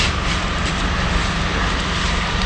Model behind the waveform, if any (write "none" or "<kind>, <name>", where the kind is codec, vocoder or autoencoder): none